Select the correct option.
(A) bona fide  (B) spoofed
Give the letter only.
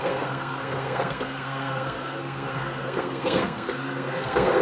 B